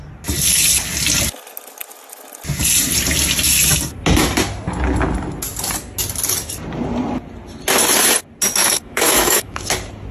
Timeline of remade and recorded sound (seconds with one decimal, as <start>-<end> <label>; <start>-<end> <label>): 0.0-8.6 recorded; 8.6-9.6 remade; 9.6-10.1 recorded